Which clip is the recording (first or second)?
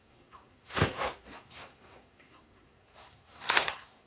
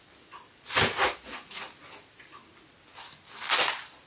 second